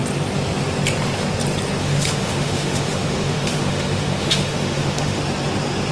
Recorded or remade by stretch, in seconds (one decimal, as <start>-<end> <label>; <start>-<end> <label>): 0.0-1.8 recorded; 1.8-5.2 remade; 5.2-5.9 recorded